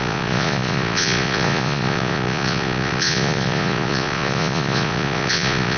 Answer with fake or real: fake